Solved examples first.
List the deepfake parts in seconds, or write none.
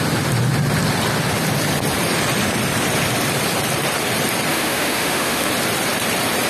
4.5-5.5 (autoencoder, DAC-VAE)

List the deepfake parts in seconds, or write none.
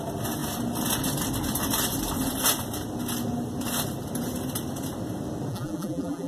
5.5-6.3 (vocoder, BigVGAN v2)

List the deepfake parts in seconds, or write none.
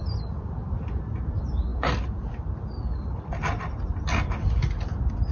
none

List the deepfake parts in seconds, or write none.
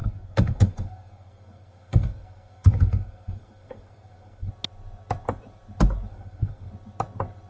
0.0-4.5 (codec, SNAC); 6.1-6.7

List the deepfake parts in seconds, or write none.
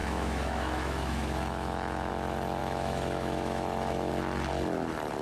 0.0-2.1 (autoencoder, DAC-VAE); 2.6-4.1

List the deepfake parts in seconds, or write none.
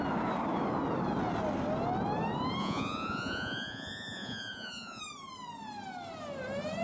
2.6-5.0 (vocoder, Vocos)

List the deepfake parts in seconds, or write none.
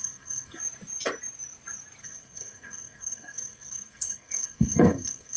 0.0-0.6 (codec, SNAC); 2.0-5.4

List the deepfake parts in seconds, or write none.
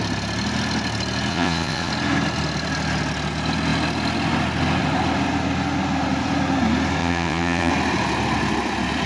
1.3-1.9 (vocoder, Vocos); 7.0-7.7